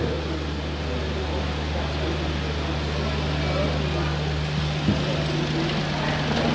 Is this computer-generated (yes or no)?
no